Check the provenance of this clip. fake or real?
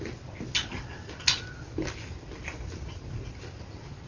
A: real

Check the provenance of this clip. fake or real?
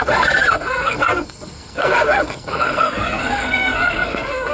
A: fake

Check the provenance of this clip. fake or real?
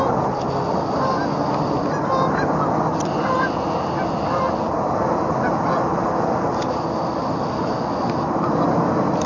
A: real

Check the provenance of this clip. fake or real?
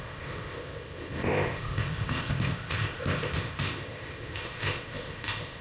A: fake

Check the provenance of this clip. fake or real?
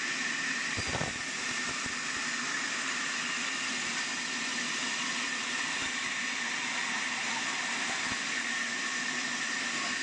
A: real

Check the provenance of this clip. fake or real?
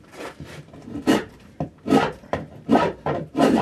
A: fake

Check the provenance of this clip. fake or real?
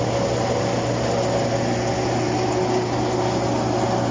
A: real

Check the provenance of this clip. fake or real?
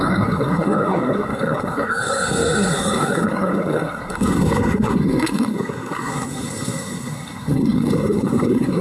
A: fake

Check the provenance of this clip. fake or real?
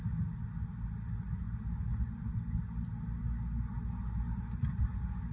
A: real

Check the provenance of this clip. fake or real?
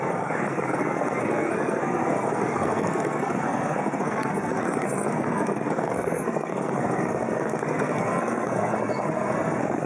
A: fake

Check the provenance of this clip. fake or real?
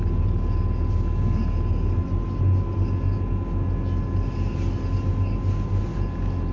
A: real